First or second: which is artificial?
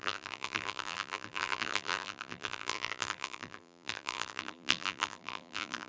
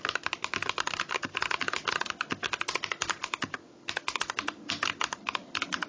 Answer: first